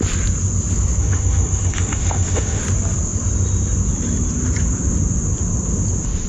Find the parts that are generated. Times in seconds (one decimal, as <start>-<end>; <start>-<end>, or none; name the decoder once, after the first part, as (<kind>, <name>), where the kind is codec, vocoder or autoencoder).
1.0-2.6 (autoencoder, DAC-VAE)